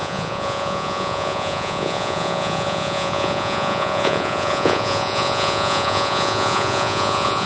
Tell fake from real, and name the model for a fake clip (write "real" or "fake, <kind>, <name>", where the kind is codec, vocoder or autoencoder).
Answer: fake, vocoder, Vocos